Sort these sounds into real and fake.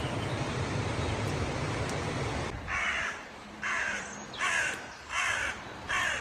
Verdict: fake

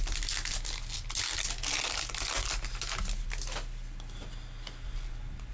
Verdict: real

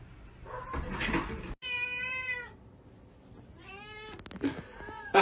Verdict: real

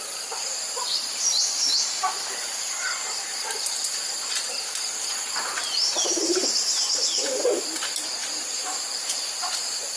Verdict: fake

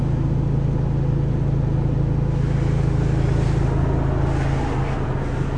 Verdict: real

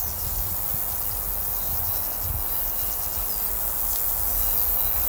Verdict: real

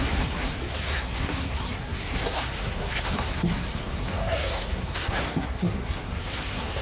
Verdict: fake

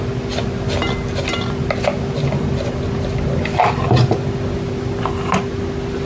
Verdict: real